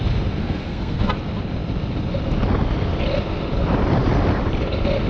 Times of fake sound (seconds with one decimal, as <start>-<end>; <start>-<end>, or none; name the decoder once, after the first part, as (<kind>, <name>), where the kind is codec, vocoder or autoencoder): 0.4-1.1 (codec, SNAC)